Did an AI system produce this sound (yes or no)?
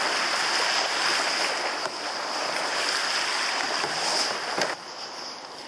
no